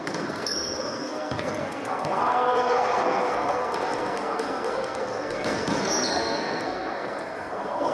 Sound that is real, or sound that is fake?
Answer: fake